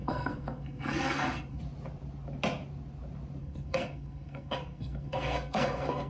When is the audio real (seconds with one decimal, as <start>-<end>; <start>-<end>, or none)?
1.6-3.4